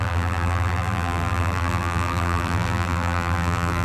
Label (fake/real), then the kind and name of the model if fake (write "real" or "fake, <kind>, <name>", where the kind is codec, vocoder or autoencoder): fake, vocoder, BigVGAN v2